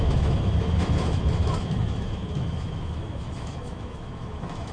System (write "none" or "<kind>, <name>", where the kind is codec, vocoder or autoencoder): autoencoder, DAC-VAE